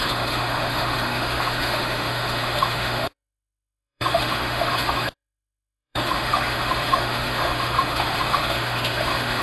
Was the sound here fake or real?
fake